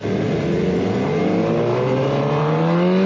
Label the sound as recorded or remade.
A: recorded